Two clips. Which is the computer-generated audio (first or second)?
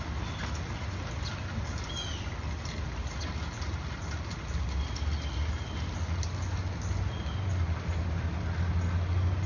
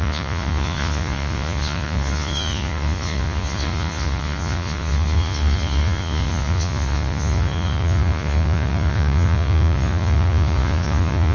second